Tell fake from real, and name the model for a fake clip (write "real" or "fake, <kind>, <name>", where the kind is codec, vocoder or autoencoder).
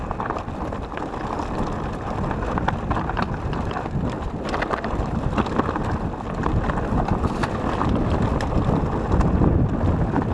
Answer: real